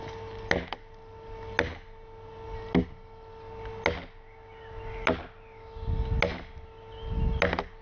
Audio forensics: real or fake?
real